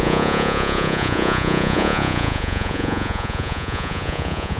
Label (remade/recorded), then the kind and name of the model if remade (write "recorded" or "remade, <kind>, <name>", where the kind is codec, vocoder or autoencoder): remade, vocoder, Vocos